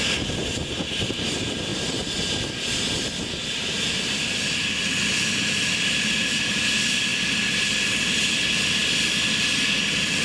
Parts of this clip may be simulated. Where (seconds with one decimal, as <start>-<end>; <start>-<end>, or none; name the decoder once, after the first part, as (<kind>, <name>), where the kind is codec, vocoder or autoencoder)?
none